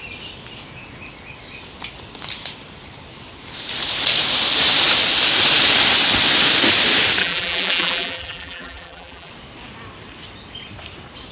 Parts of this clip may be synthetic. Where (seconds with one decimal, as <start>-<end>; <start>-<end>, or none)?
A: 7.2-9.3